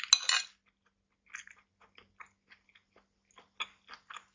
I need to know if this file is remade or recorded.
recorded